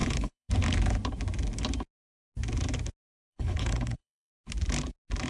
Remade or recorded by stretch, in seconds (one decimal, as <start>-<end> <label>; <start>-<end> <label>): 0.0-0.5 remade; 0.5-3.3 recorded; 3.3-4.3 remade; 4.3-5.3 recorded